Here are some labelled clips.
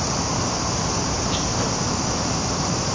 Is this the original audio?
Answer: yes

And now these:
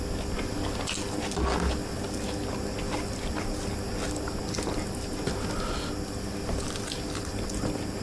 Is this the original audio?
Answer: yes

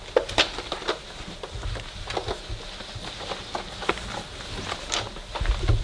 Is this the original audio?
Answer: yes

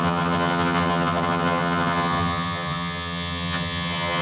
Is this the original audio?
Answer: no